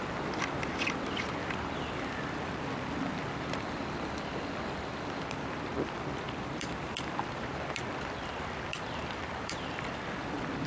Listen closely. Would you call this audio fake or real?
fake